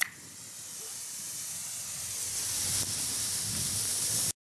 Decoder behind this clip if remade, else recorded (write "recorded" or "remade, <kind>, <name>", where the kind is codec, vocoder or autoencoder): recorded